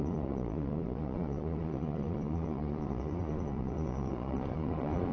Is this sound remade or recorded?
remade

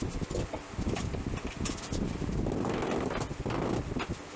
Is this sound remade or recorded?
recorded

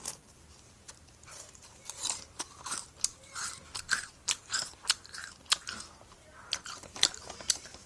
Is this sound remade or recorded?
remade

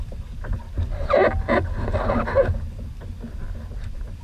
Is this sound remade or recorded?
recorded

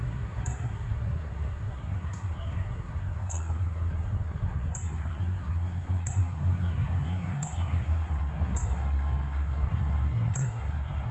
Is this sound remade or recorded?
remade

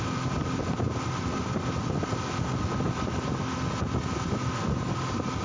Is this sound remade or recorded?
recorded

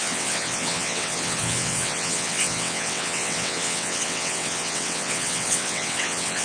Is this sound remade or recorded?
remade